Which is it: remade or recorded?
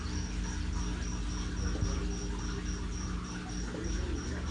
recorded